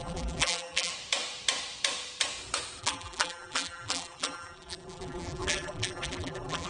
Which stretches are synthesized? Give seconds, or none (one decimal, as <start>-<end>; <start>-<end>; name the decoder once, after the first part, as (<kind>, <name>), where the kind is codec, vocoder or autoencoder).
0.0-0.9 (vocoder, BigVGAN v2); 2.8-6.7